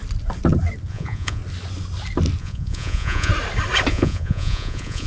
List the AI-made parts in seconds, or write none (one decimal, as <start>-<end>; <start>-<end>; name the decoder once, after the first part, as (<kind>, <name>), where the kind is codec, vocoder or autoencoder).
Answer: 0.9-1.4 (vocoder, Vocos); 2.4-3.3; 3.9-5.1